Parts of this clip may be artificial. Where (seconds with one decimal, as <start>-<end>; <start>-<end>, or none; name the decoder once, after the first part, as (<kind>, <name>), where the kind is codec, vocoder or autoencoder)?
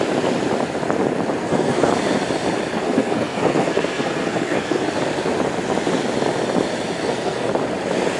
1.4-1.9 (codec, SNAC); 2.7-5.0; 7.0-7.5